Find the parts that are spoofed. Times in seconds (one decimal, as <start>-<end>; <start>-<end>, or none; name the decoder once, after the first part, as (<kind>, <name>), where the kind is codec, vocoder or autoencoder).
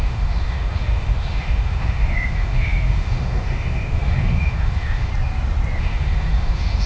0.0-5.1 (autoencoder, DAC-VAE); 5.8-6.9